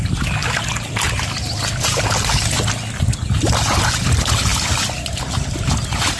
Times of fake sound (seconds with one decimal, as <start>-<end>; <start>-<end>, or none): none